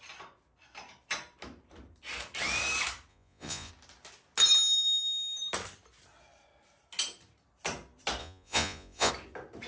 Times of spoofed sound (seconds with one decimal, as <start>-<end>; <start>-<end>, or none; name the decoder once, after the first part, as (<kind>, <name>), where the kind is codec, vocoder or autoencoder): 3.1-3.7 (vocoder, Vocos); 8.2-9.1